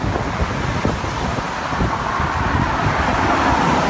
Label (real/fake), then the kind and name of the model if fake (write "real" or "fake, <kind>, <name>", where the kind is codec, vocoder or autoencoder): real